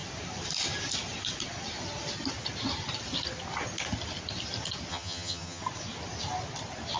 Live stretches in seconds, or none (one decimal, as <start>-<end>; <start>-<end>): 0.0-4.9; 5.6-7.0